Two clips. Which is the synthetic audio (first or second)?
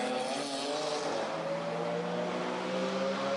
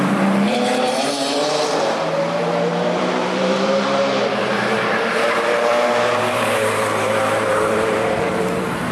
second